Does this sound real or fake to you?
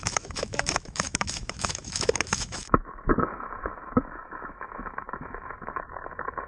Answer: fake